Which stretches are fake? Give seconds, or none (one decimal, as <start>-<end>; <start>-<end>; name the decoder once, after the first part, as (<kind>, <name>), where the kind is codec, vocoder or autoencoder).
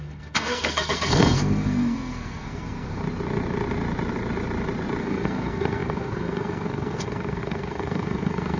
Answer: 0.0-3.0 (codec, SNAC); 5.0-8.6